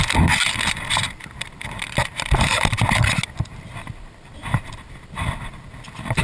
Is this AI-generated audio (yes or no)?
no